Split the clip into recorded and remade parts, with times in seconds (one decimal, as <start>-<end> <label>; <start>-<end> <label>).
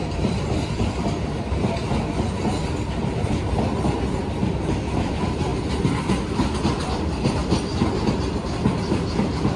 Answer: 0.0-1.8 remade; 1.8-4.7 recorded; 4.7-5.5 remade; 5.5-6.0 recorded; 6.0-7.4 remade; 7.4-9.1 recorded; 9.1-9.6 remade